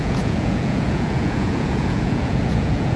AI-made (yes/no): yes